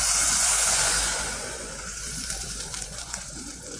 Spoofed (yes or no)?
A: yes